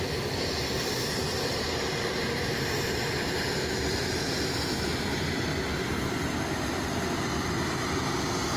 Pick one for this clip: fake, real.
real